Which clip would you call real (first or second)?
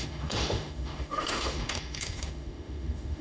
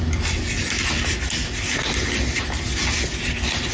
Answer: second